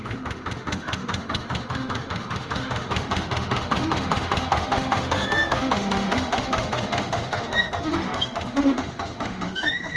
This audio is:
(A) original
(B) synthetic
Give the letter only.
B